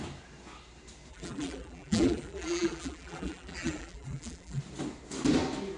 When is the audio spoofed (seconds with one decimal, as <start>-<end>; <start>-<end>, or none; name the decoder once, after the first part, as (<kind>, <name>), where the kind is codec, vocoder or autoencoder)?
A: 1.1-4.6 (vocoder, BigVGAN v2)